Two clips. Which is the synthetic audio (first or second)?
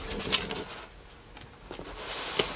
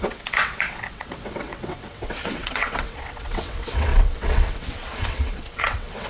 second